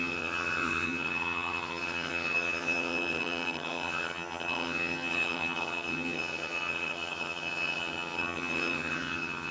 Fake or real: fake